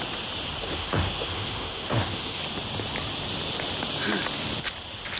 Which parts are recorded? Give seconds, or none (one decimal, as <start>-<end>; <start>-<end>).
0.0-0.6; 2.4-5.2

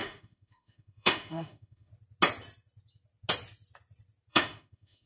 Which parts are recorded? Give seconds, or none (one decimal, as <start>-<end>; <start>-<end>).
1.9-4.3

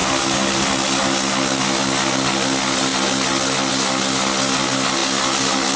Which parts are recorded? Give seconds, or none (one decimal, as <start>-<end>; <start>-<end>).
0.0-5.8

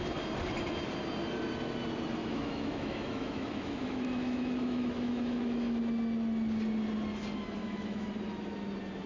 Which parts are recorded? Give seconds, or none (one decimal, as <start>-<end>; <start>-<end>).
0.0-2.2; 5.8-7.6; 8.1-9.1

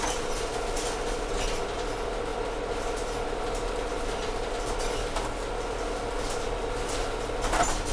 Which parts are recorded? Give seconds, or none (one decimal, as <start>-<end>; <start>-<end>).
0.0-7.9

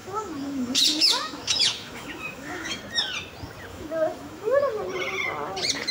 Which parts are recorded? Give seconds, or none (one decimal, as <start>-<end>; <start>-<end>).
2.8-3.7; 4.6-5.9

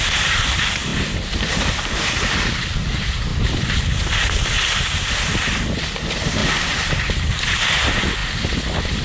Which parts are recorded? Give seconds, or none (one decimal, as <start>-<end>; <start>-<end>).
0.0-9.0

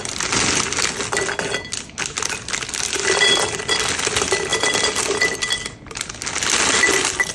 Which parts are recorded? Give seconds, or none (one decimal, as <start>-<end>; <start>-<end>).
0.0-7.3